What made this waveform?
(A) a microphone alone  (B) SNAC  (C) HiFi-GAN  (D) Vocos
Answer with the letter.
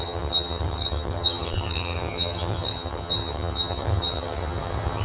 C